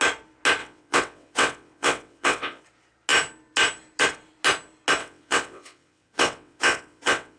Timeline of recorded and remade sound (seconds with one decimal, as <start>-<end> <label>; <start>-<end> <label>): 0.0-0.6 recorded; 0.6-2.6 remade; 2.6-5.0 recorded; 5.0-7.4 remade